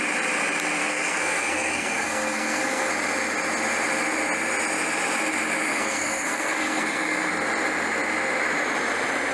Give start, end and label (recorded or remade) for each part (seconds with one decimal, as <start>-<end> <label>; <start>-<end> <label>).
0.0-0.8 recorded; 0.8-2.9 remade; 2.9-5.7 recorded; 5.7-7.3 remade; 7.3-9.3 recorded